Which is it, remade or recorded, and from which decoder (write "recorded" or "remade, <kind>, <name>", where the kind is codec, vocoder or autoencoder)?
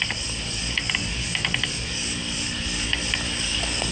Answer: remade, codec, DAC